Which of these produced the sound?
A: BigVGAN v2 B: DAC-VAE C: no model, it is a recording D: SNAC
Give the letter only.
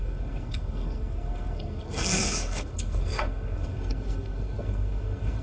D